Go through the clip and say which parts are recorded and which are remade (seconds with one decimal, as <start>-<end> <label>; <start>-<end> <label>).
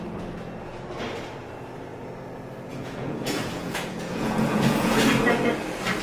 0.0-2.7 recorded; 2.7-5.1 remade; 5.1-6.0 recorded